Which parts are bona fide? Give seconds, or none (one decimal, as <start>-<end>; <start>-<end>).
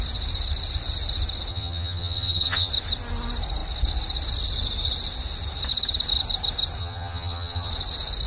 0.0-1.5; 2.7-6.8; 7.7-8.3